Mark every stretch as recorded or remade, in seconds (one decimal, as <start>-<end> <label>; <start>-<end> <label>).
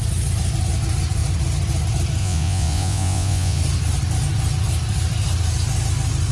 0.0-2.2 recorded; 2.2-3.6 remade; 3.6-6.3 recorded